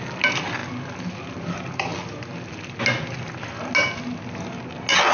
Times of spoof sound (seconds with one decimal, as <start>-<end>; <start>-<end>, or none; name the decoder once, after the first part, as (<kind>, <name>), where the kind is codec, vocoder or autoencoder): none